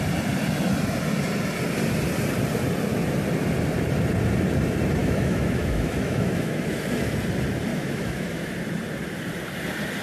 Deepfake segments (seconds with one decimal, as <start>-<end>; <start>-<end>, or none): 5.0-7.2; 7.7-8.5